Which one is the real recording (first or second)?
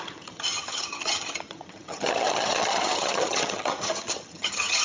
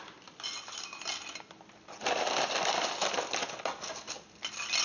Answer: second